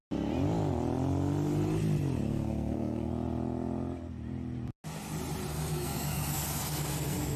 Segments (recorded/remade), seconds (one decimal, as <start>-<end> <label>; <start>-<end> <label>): 0.0-2.3 recorded; 2.3-3.1 remade; 3.1-5.5 recorded; 5.5-7.4 remade